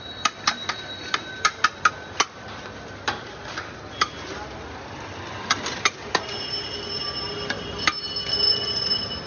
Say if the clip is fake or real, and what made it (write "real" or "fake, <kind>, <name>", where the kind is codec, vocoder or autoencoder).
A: real